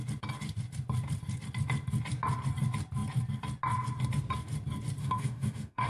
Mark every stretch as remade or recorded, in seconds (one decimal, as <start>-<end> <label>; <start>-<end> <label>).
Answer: 0.0-5.0 recorded; 5.0-5.9 remade